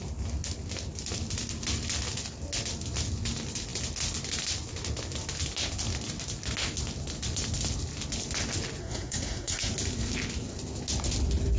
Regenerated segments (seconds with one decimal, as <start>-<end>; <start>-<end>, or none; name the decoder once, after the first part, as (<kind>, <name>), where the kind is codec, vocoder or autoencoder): 8.8-9.7 (codec, SNAC)